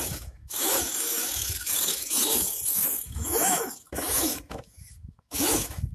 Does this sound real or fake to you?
fake